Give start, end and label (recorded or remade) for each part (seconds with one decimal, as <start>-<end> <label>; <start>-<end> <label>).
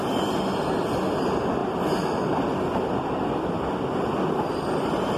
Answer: 0.0-5.2 recorded